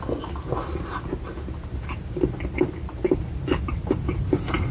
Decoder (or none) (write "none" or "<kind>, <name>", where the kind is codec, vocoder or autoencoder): none